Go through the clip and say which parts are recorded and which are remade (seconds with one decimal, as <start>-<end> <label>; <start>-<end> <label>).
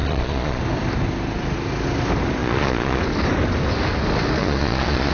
0.0-0.6 remade; 0.6-2.4 recorded; 2.4-3.0 remade; 3.0-4.4 recorded; 4.4-5.1 remade